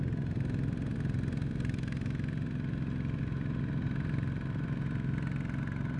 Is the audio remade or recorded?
recorded